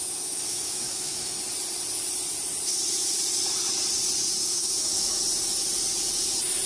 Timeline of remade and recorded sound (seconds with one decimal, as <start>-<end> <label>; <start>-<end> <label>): 0.0-1.4 remade; 1.4-4.4 recorded; 4.4-5.2 remade; 5.2-6.7 recorded